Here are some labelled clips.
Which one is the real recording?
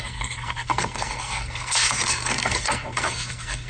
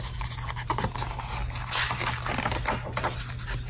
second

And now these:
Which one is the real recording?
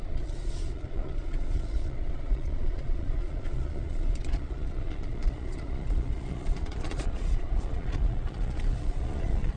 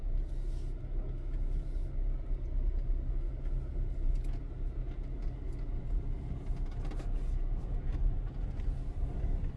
second